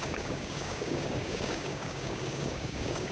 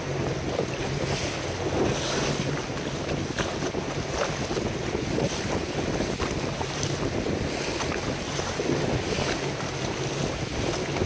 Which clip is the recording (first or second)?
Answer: second